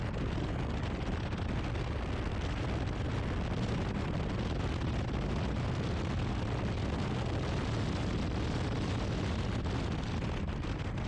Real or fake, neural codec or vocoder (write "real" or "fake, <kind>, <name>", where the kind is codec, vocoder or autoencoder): real